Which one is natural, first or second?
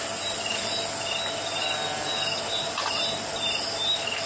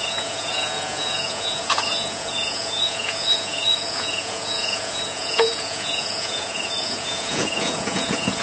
first